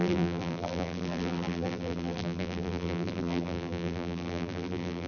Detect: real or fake fake